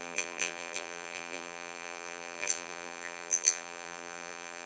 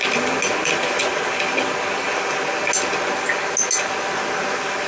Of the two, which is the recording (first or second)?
second